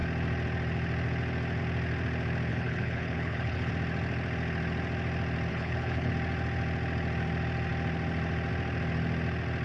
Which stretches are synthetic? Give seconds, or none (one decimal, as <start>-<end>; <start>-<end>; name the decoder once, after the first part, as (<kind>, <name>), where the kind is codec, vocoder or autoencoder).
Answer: 2.5-3.7 (codec, HILCodec); 5.5-6.1